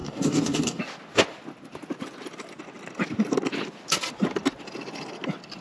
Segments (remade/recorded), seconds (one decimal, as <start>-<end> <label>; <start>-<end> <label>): 0.0-0.8 remade; 0.8-5.6 recorded